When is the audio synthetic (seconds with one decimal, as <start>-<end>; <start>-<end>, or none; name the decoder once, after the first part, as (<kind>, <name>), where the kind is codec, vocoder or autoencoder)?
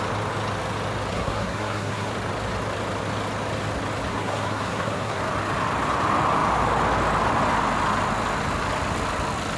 1.1-2.1 (codec, SNAC); 4.1-5.2